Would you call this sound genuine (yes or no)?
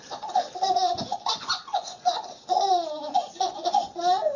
no